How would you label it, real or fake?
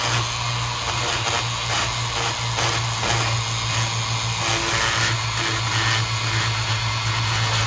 real